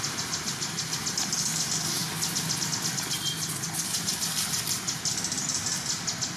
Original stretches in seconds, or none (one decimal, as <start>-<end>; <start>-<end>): 0.0-6.4